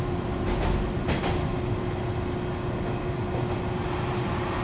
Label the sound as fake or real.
real